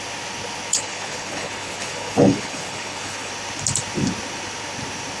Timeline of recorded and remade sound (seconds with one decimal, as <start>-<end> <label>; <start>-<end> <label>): 0.0-0.7 recorded; 0.7-3.3 remade; 3.3-5.2 recorded